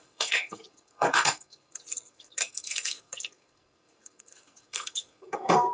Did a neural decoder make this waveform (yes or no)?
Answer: yes